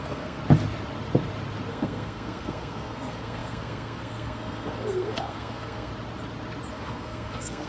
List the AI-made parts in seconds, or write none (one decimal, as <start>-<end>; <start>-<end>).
0.0-0.4; 1.7-5.9; 6.7-7.7